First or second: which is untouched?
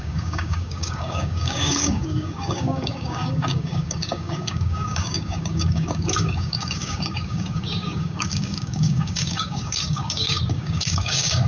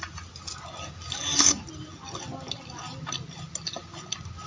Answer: second